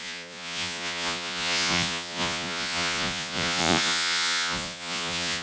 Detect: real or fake fake